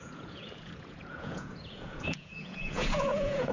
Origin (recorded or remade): remade